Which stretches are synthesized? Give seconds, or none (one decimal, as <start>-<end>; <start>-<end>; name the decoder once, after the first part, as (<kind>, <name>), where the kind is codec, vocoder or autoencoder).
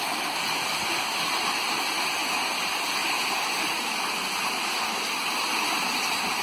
none